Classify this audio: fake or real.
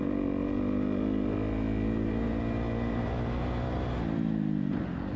real